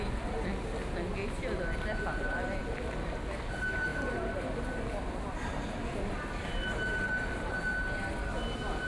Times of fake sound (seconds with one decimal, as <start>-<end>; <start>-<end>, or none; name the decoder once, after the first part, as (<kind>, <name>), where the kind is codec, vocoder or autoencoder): 3.9-4.4 (vocoder, BigVGAN v2)